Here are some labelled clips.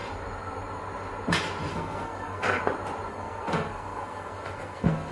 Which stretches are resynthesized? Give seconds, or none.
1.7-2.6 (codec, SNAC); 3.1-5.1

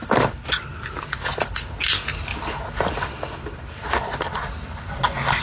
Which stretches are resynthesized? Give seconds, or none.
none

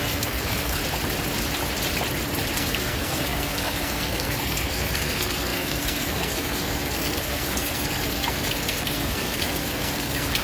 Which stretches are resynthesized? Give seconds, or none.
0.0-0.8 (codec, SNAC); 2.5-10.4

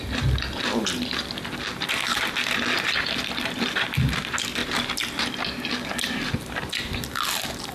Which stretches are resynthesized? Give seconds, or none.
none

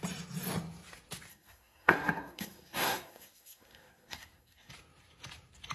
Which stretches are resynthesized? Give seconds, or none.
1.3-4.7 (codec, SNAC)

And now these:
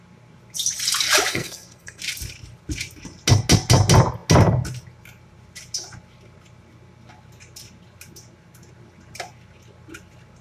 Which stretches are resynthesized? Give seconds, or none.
1.3-2.0 (codec, SNAC)

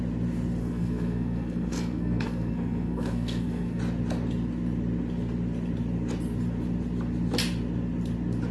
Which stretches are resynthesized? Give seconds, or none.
0.6-3.8 (codec, SNAC)

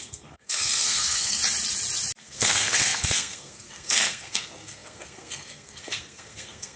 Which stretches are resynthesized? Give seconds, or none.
0.0-1.4 (codec, SNAC); 2.2-6.8